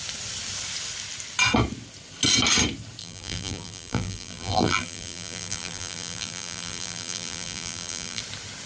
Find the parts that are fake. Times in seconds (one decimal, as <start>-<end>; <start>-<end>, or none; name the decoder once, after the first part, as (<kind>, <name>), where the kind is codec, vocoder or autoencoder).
3.0-8.2 (vocoder, BigVGAN v2)